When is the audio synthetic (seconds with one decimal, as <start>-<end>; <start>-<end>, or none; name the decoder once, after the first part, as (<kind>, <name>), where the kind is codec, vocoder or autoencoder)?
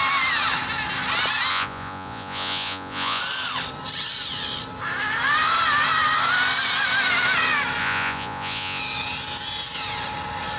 1.5-3.2 (vocoder, Vocos); 7.8-8.8